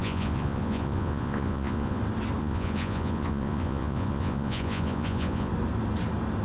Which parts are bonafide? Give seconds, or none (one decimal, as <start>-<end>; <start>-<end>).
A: 2.0-2.4; 5.5-6.4